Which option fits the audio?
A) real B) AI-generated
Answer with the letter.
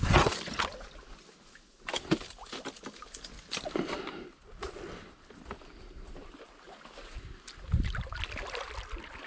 A